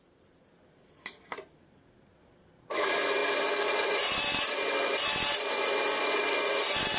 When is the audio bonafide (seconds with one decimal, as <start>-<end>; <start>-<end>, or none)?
3.2-6.5